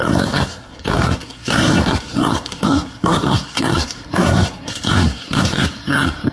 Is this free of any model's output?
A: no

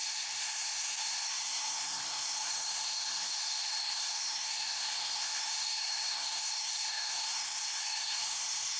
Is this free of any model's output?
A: no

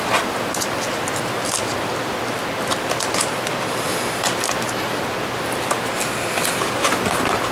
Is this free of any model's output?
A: yes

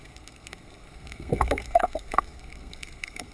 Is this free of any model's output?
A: no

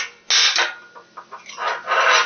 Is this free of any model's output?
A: yes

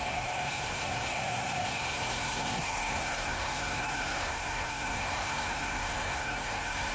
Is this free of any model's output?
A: no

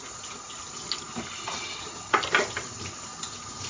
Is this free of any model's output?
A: yes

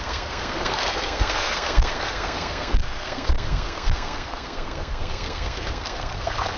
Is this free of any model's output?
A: no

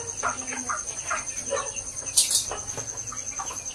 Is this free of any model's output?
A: yes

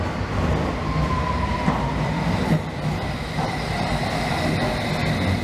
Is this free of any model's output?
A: yes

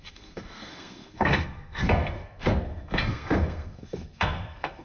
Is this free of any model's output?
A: no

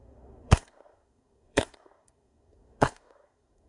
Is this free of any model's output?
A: no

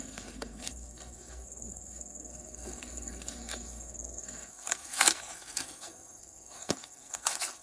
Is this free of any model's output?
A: no